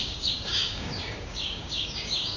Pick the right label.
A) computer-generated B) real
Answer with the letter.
A